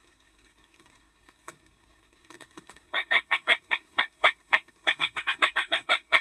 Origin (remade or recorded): remade